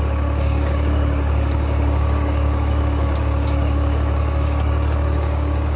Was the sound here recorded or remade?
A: remade